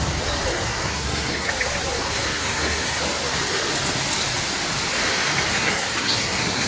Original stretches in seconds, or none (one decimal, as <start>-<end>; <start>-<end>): 0.0-0.5; 1.5-2.0; 3.0-5.5